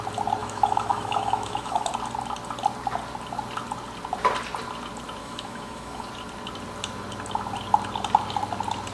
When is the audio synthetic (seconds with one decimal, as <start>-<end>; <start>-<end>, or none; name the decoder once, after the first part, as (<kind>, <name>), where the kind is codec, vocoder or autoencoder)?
0.4-1.9 (autoencoder, DAC-VAE); 5.2-6.1